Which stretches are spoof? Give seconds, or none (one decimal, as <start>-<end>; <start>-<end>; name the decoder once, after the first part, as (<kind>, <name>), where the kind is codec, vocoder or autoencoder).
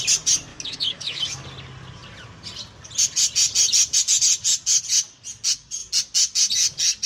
0.5-1.2 (autoencoder, DAC-VAE)